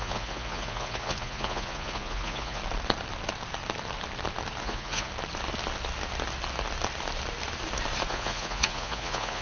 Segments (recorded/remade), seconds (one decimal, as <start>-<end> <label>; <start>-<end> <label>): 0.0-2.6 remade; 2.6-4.6 recorded; 4.6-5.1 remade; 5.1-8.1 recorded; 8.1-9.4 remade